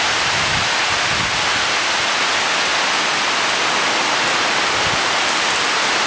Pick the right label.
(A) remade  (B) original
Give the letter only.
B